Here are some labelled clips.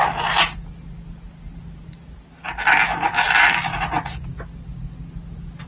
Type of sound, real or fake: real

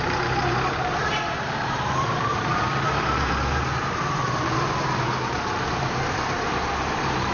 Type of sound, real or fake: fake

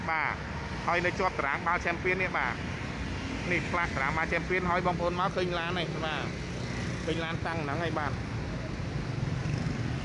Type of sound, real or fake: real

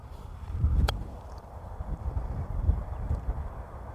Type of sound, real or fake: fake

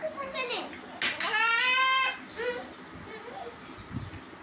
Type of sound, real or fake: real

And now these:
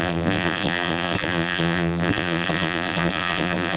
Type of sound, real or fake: fake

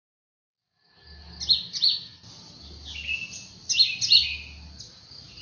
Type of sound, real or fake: real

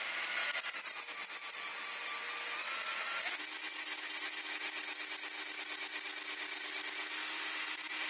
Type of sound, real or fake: real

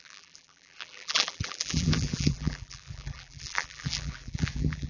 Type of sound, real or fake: fake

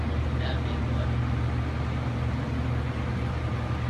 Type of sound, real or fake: real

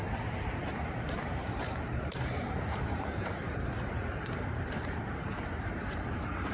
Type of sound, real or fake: fake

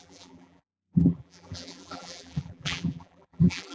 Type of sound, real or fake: fake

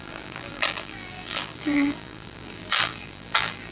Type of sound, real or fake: fake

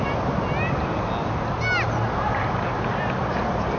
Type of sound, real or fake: real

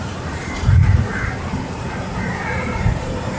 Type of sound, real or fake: fake